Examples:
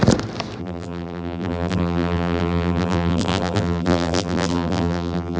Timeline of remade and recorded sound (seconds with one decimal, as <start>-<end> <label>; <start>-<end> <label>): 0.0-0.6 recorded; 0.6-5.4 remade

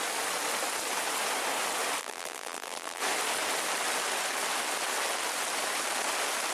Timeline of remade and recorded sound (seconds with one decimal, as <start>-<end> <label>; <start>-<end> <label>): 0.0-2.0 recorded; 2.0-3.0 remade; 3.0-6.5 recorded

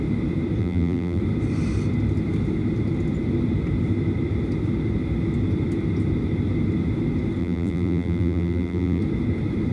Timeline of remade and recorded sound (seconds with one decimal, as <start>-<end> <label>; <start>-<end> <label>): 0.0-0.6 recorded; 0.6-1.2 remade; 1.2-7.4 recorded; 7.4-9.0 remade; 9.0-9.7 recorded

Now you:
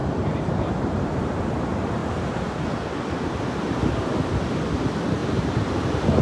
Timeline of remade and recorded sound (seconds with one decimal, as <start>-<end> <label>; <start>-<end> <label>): 0.0-1.4 remade; 1.4-2.0 recorded; 2.0-2.8 remade; 2.8-5.2 recorded; 5.2-6.2 remade

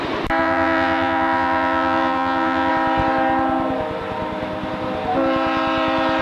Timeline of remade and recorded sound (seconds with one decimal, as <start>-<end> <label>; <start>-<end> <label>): 0.0-0.4 recorded; 0.4-2.7 remade; 2.7-6.2 recorded